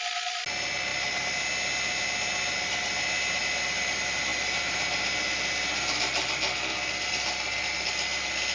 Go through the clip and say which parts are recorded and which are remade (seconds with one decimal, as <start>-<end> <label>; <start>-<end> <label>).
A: 0.0-8.5 recorded